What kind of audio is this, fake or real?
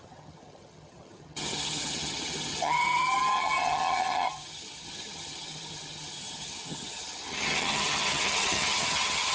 fake